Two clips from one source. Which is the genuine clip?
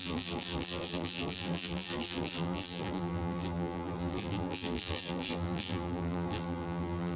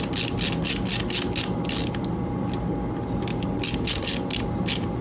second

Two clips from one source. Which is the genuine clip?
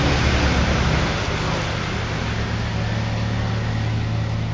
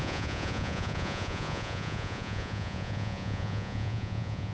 first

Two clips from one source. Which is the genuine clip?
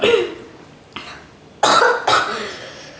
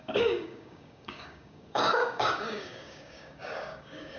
first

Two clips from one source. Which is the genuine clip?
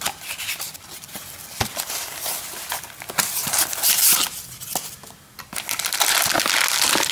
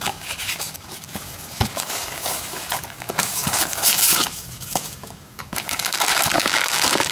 first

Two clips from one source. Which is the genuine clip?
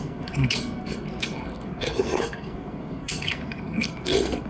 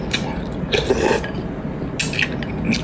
second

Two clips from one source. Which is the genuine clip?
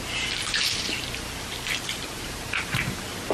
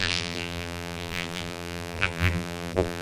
first